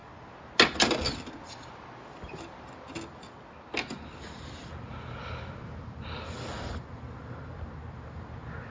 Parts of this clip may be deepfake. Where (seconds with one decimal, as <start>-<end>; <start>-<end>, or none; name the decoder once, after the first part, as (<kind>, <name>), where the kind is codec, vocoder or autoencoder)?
none